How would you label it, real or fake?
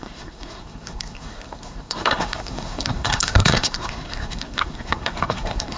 fake